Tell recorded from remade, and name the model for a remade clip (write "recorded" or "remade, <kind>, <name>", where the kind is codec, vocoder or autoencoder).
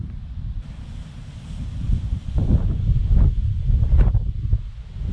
recorded